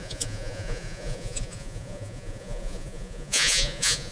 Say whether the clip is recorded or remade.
remade